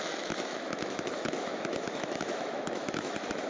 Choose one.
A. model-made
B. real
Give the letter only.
A